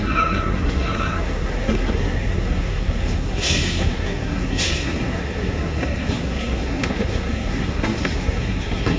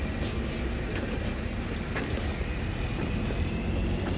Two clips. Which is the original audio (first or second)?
second